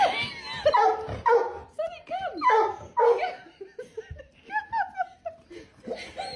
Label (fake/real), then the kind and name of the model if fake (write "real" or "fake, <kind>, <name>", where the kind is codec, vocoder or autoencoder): real